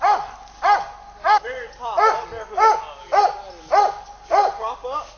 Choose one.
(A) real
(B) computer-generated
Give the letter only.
A